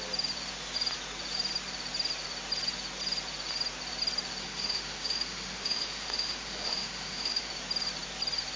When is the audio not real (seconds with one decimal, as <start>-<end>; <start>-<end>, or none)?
4.4-7.5